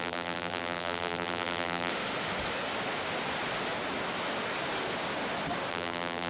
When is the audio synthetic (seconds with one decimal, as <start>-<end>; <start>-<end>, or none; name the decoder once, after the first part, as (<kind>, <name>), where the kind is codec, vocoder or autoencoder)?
0.0-1.9 (vocoder, BigVGAN v2); 5.7-6.3